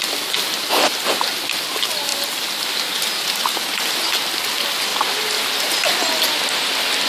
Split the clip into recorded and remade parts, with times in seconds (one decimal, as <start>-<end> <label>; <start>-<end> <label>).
0.0-4.9 recorded; 4.9-5.4 remade; 5.4-7.1 recorded